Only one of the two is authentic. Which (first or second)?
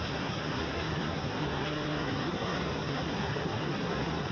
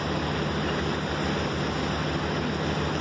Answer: second